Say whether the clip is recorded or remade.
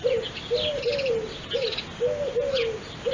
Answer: recorded